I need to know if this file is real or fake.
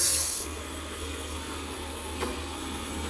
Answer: fake